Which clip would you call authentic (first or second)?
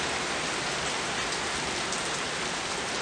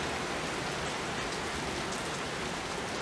second